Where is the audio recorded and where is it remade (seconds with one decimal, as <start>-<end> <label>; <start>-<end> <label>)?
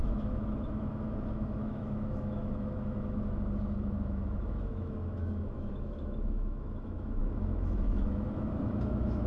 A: 0.0-9.3 remade